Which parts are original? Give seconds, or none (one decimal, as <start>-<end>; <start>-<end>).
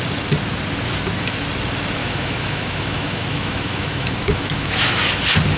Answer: 0.0-2.0; 5.0-5.6